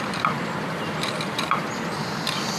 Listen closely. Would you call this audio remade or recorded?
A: remade